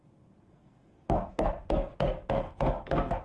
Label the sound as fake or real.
fake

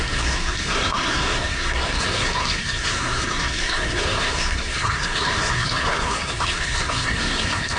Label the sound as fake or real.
fake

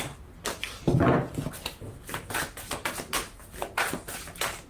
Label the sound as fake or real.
real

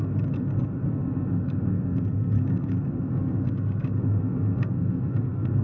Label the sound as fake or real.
fake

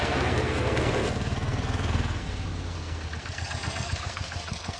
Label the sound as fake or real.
fake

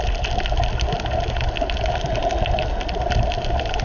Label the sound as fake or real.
real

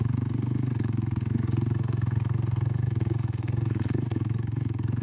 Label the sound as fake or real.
fake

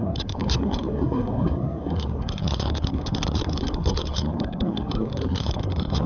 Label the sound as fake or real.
fake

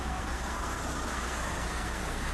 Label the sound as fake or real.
fake